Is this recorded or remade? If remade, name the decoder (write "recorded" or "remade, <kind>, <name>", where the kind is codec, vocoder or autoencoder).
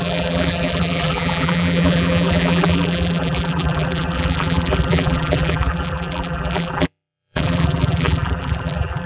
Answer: remade, vocoder, BigVGAN v2